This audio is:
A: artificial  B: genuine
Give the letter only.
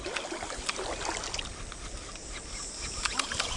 B